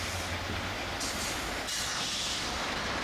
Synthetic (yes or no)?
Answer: no